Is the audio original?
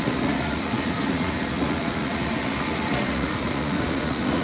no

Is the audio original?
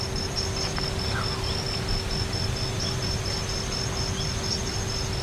yes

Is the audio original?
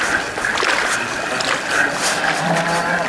yes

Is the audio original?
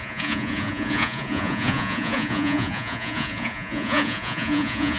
no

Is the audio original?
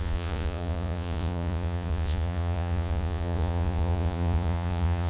no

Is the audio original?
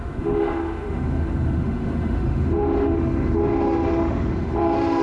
no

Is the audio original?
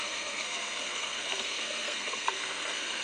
no